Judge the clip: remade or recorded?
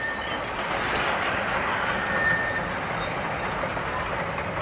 recorded